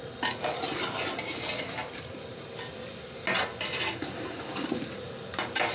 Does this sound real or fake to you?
real